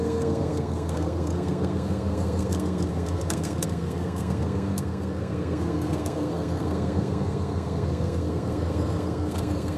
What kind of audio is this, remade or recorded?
remade